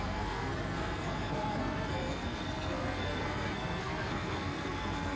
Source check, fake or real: fake